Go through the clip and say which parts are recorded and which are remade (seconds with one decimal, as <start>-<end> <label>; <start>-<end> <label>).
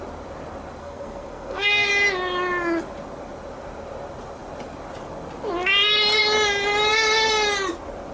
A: 0.0-0.8 recorded; 0.8-1.9 remade; 1.9-8.1 recorded